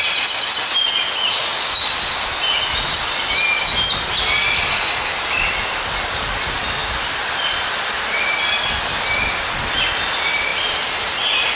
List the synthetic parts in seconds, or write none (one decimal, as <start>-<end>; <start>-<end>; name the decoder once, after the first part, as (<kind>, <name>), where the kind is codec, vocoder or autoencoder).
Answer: 1.4-1.9 (vocoder, Vocos)